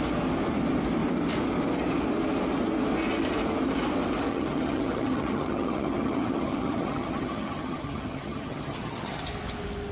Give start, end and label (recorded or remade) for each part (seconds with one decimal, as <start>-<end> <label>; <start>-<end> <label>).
0.0-4.3 recorded; 4.3-9.2 remade; 9.2-9.9 recorded